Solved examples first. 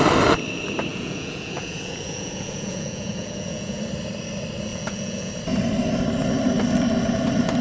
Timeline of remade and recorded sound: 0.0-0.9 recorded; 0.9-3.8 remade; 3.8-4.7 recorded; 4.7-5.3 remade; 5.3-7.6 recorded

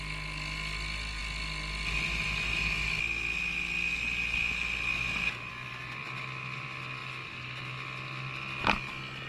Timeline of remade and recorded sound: 0.0-9.3 recorded